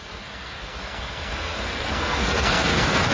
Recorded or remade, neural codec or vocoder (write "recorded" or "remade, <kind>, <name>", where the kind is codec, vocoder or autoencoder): remade, codec, SNAC